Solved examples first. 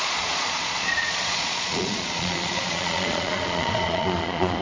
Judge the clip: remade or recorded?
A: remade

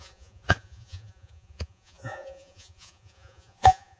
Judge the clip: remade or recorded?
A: remade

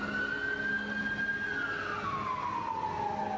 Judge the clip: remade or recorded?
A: recorded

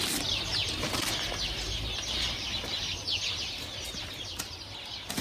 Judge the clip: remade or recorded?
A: recorded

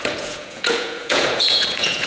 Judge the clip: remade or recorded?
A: remade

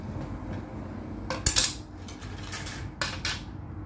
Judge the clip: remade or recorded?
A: recorded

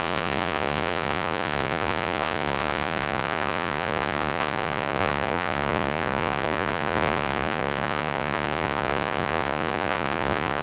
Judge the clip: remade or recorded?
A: remade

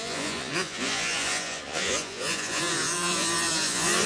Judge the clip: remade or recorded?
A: remade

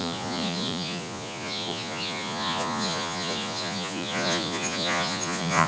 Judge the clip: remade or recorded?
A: remade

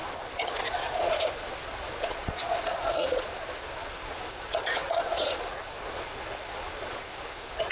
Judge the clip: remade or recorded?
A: remade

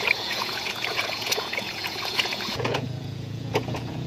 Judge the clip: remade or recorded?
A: remade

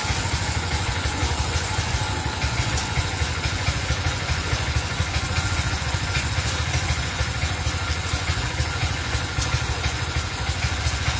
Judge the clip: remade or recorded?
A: remade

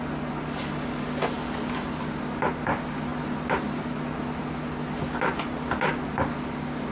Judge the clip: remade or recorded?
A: recorded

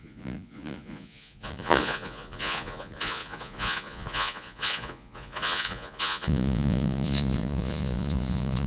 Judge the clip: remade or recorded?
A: remade